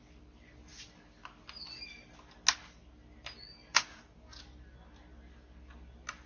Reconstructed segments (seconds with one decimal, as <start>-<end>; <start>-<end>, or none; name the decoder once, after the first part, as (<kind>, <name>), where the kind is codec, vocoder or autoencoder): 3.7-4.4 (vocoder, Vocos)